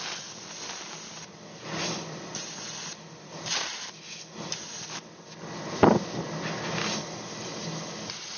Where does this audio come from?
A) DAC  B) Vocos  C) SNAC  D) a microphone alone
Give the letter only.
D